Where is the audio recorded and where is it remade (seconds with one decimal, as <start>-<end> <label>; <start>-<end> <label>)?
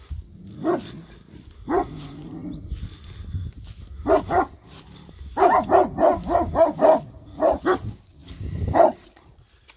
0.0-9.8 recorded